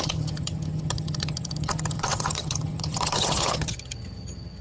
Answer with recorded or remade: remade